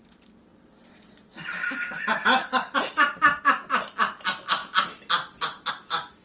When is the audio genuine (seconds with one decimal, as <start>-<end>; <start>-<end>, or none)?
0.0-6.2